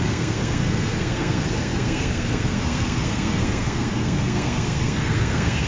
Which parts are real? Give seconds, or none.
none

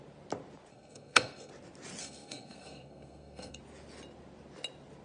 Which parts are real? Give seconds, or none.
0.0-0.7; 1.5-2.0; 3.6-5.0

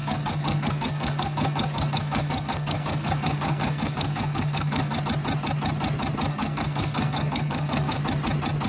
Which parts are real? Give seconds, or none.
5.0-6.3; 8.0-8.7

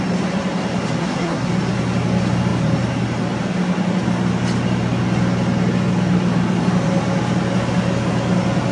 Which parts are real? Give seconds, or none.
0.0-1.0; 1.5-8.7

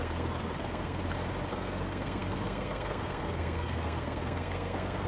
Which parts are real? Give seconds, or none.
1.0-1.5

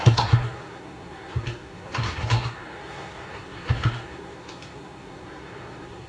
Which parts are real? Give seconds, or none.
none